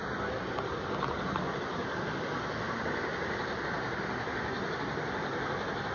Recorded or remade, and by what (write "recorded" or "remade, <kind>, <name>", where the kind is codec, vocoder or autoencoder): recorded